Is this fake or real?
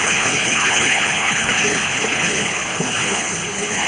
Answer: fake